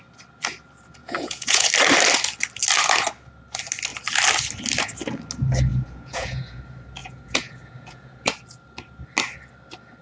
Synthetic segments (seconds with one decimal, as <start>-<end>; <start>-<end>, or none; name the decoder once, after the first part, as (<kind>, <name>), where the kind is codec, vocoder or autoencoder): 1.0-1.7 (vocoder, Vocos); 5.7-6.6; 7.0-8.3